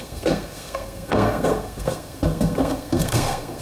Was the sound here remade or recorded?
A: remade